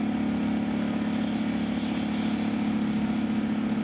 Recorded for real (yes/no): yes